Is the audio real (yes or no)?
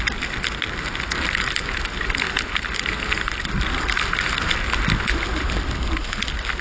yes